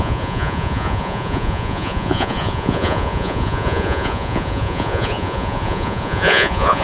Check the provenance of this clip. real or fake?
fake